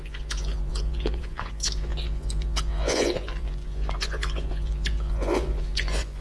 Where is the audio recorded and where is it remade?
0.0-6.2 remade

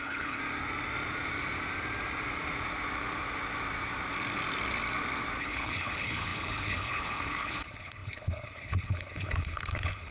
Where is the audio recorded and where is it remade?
0.0-0.4 remade; 0.4-5.4 recorded; 5.4-10.1 remade

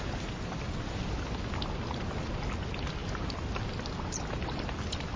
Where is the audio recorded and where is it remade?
0.0-5.2 recorded

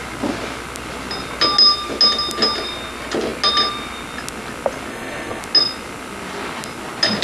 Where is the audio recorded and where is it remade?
0.0-4.9 recorded; 4.9-5.4 remade; 5.4-7.2 recorded

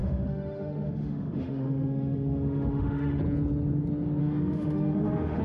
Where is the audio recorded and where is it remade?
0.0-3.2 remade; 3.2-4.2 recorded; 4.2-5.4 remade

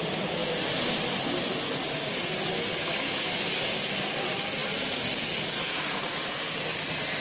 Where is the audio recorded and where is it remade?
0.0-7.2 recorded

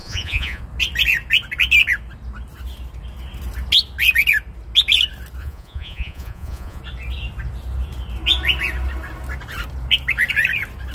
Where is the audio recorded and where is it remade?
0.0-0.6 remade; 0.6-5.4 recorded; 5.4-6.8 remade; 6.8-10.9 recorded